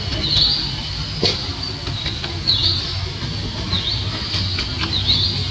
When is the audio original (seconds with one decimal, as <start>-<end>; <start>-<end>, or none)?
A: 0.0-5.5